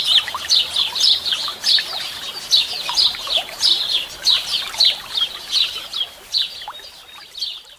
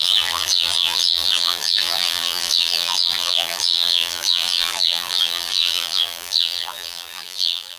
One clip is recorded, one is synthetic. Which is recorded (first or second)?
first